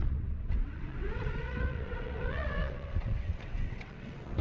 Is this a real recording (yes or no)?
no